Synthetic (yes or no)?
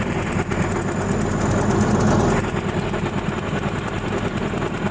no